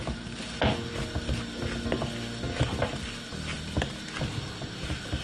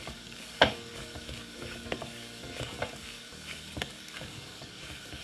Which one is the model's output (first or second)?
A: second